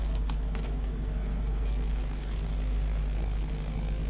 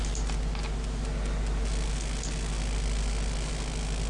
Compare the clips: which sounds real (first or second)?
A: second